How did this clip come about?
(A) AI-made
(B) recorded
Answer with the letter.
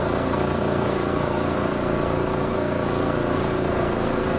A